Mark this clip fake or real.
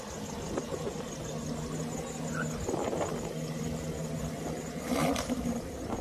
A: real